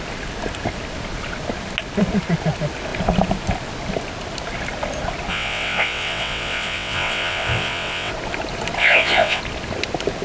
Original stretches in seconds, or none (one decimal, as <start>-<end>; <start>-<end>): 0.0-5.3; 8.1-8.8; 9.4-10.2

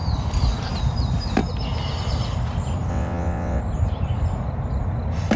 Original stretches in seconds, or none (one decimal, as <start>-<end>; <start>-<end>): 0.0-2.9; 3.6-5.4

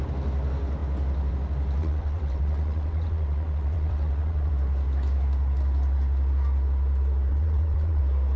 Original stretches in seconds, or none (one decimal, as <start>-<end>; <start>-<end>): 0.0-1.8; 4.5-7.3; 8.0-8.4

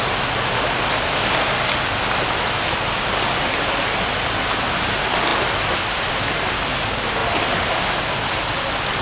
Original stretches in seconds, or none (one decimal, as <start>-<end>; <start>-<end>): 0.0-9.0

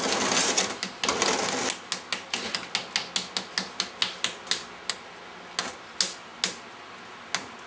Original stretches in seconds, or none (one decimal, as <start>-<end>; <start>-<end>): 0.0-7.7